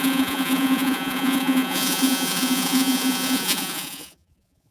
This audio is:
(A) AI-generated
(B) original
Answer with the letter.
A